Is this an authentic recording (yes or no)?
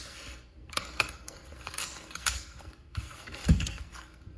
no